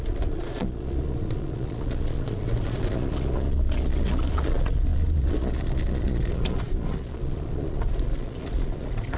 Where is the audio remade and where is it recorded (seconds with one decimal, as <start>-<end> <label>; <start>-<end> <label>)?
0.0-9.2 remade

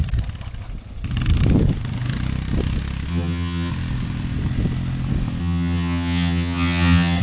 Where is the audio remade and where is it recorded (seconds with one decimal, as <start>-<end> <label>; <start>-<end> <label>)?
0.0-3.1 recorded; 3.1-3.7 remade; 3.7-5.4 recorded; 5.4-7.2 remade

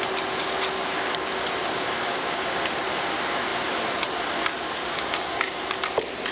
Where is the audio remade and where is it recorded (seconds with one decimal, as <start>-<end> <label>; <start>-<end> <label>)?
0.0-1.6 recorded; 1.6-2.7 remade; 2.7-4.8 recorded; 4.8-5.5 remade; 5.5-6.3 recorded

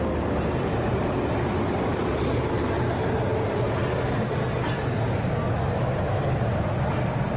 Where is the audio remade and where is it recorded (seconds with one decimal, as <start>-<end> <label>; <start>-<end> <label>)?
0.0-0.9 recorded; 0.9-2.1 remade; 2.1-7.4 recorded

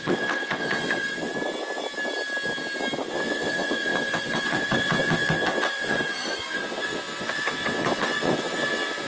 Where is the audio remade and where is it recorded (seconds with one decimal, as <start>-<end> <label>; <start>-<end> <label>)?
0.0-1.3 remade; 1.3-3.1 recorded; 3.1-9.1 remade

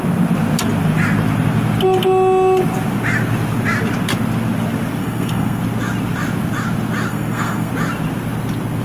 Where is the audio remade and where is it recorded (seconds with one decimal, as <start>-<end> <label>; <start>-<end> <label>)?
0.0-5.0 recorded; 5.0-5.6 remade; 5.6-7.1 recorded; 7.1-7.7 remade; 7.7-8.8 recorded